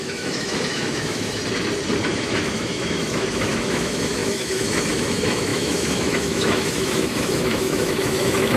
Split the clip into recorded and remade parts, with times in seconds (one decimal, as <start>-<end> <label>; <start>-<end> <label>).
0.0-1.4 remade; 1.4-2.1 recorded; 2.1-8.6 remade